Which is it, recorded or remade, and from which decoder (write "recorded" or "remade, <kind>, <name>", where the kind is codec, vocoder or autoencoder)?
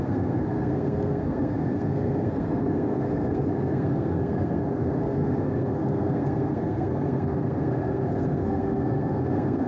remade, codec, SNAC